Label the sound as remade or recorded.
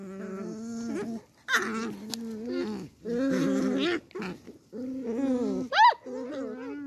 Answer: recorded